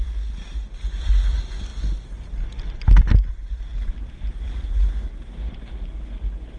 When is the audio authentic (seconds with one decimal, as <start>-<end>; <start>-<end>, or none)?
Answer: 0.0-6.6